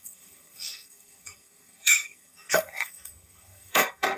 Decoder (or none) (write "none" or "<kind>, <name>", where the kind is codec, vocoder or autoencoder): codec, SNAC